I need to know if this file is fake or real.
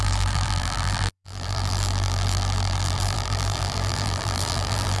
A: fake